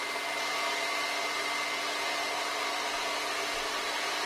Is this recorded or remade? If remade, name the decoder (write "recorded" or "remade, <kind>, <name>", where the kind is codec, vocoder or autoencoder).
recorded